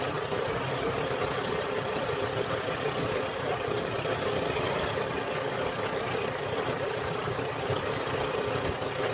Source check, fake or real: real